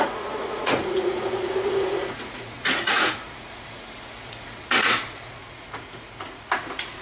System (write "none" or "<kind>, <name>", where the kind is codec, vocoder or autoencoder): vocoder, Vocos